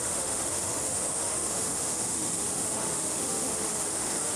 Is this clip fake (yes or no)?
yes